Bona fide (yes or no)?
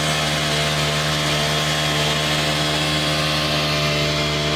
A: yes